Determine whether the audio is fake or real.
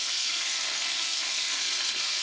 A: fake